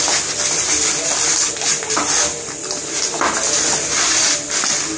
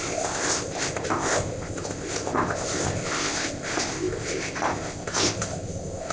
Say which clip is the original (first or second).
first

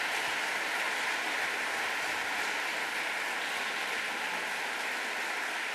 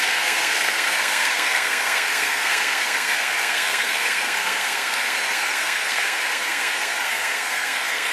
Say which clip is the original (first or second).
first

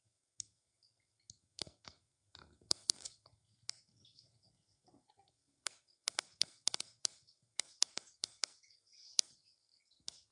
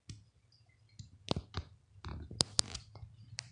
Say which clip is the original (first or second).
second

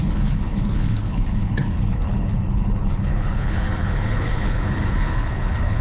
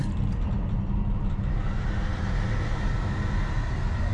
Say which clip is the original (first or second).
second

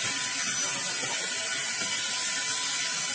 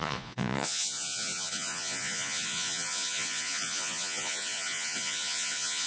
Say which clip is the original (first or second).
first